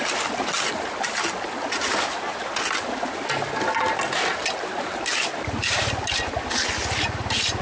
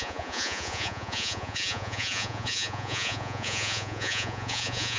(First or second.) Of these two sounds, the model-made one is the second